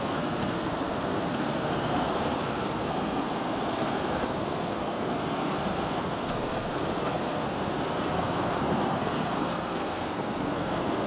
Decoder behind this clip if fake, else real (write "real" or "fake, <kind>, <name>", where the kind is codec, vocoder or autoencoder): fake, codec, SNAC